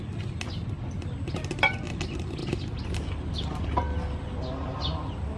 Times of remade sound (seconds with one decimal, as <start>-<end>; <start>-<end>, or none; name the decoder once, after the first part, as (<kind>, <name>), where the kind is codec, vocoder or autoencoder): none